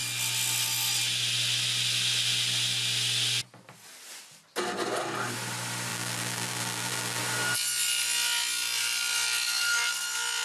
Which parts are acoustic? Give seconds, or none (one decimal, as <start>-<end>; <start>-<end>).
0.0-5.9; 7.2-10.4